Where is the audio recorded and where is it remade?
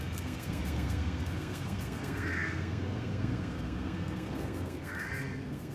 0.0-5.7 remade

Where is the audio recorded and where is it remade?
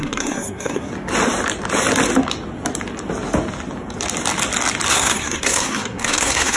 0.0-0.9 remade; 0.9-4.9 recorded; 4.9-6.6 remade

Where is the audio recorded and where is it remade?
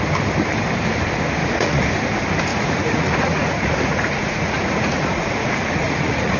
0.0-1.4 recorded; 1.4-1.9 remade; 1.9-2.5 recorded; 2.5-6.4 remade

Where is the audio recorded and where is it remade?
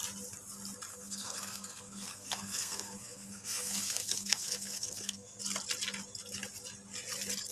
0.0-0.9 recorded; 0.9-5.4 remade; 5.4-7.5 recorded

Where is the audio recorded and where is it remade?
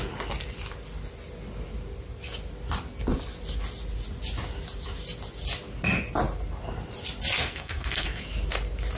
0.0-7.4 recorded; 7.4-8.2 remade; 8.2-9.0 recorded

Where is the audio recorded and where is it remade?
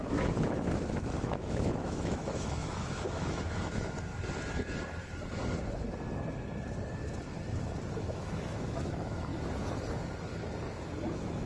0.0-4.1 remade; 4.1-8.0 recorded; 8.0-9.3 remade; 9.3-11.1 recorded; 11.1-11.5 remade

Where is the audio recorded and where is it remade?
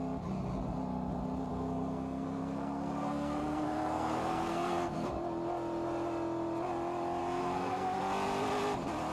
0.0-1.5 recorded; 1.5-5.1 remade; 5.1-7.2 recorded; 7.2-8.0 remade; 8.0-9.1 recorded